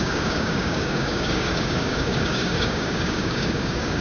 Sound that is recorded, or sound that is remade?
remade